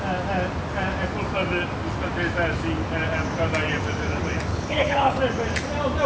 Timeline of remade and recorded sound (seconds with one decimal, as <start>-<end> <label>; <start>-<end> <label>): 0.0-4.5 recorded; 4.5-5.2 remade; 5.2-6.1 recorded